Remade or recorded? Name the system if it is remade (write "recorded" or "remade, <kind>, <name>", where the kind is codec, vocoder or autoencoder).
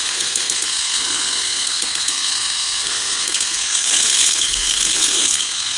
remade, codec, SNAC